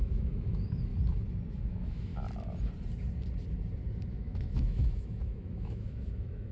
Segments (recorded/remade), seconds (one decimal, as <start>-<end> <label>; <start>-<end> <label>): 0.0-0.9 remade; 0.9-1.5 recorded; 1.5-2.1 remade; 2.1-4.1 recorded; 4.1-6.5 remade